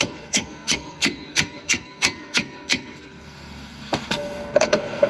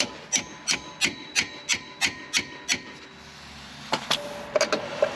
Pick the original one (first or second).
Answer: second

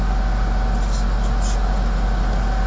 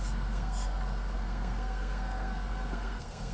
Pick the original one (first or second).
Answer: first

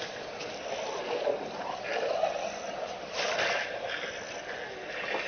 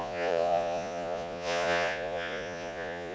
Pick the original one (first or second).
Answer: first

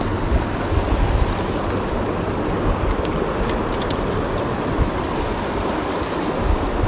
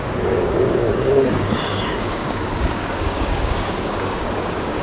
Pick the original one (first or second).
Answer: first